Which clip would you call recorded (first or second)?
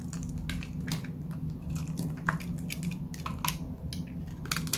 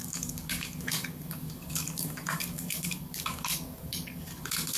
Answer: first